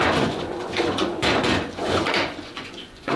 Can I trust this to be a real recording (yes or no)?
no